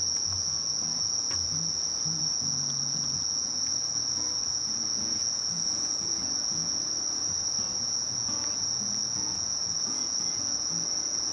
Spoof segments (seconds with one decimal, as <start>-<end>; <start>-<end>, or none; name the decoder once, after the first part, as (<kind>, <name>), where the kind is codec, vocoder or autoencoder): 0.0-6.8 (vocoder, Vocos); 7.8-11.3